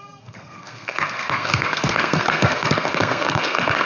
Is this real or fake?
fake